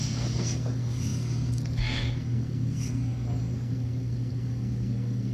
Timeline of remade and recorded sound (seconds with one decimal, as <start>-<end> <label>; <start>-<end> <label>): 0.0-5.3 remade